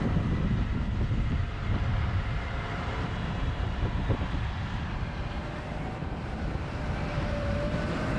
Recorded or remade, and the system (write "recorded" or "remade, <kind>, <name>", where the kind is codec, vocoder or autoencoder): remade, vocoder, BigVGAN v2